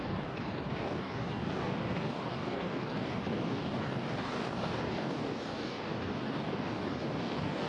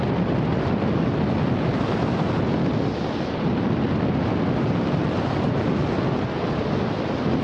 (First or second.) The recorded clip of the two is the second